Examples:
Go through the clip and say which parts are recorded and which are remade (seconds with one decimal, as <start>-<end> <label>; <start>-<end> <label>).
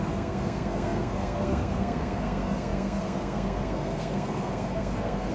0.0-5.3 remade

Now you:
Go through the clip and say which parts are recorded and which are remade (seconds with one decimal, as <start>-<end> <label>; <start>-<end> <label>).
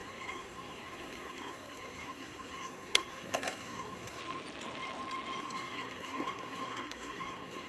0.0-4.2 remade; 4.2-5.4 recorded; 5.4-7.7 remade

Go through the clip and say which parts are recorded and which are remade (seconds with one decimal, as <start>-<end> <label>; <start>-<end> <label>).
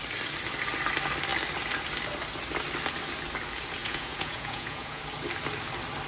0.0-3.8 recorded; 3.8-5.0 remade; 5.0-6.1 recorded